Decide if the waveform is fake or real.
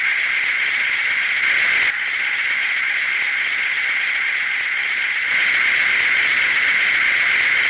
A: real